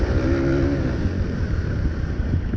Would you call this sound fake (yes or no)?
no